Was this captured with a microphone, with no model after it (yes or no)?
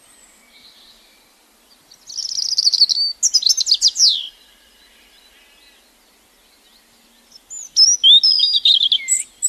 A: yes